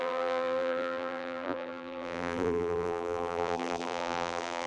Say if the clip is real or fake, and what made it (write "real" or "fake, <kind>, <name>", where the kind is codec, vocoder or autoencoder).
fake, vocoder, BigVGAN v2